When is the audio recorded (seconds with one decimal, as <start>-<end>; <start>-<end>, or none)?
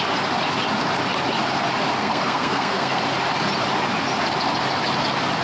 0.0-2.0; 3.0-5.4